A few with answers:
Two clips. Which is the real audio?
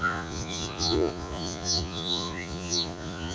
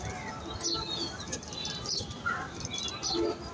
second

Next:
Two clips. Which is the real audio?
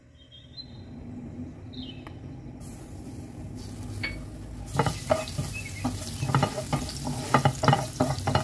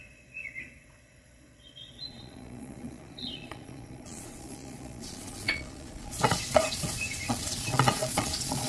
first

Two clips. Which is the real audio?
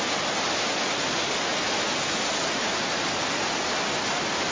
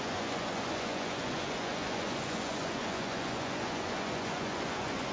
first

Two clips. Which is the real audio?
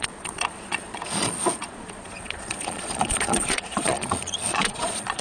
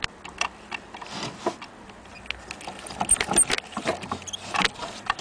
second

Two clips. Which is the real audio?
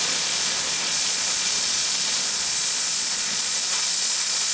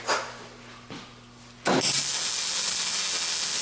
second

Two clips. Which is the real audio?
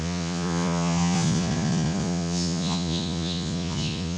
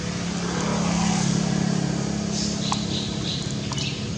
second